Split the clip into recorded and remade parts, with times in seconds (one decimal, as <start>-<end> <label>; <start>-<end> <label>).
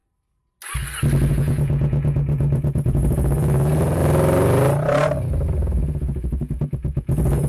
0.0-1.3 recorded; 1.3-4.0 remade; 4.0-5.5 recorded; 5.5-7.5 remade